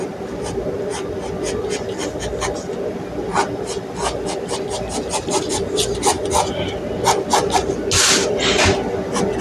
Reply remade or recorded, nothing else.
recorded